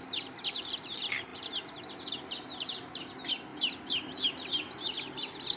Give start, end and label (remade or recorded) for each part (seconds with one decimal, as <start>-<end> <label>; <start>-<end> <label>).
0.0-5.6 recorded